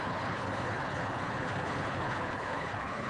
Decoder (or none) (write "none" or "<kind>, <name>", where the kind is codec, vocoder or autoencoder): codec, HILCodec